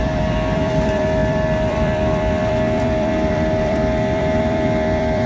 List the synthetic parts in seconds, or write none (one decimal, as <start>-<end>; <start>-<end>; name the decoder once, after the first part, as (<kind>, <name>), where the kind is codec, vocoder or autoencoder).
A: 0.0-5.3 (vocoder, BigVGAN v2)

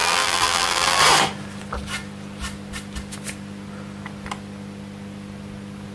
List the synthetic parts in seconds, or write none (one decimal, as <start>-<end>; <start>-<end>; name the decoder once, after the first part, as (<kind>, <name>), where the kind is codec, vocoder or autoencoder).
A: 0.0-1.0 (vocoder, BigVGAN v2)